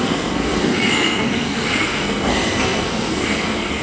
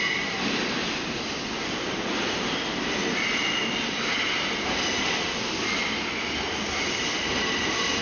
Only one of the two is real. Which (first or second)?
second